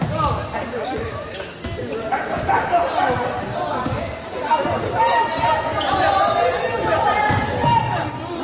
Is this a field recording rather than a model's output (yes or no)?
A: yes